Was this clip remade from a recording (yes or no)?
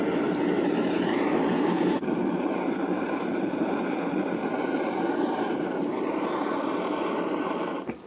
yes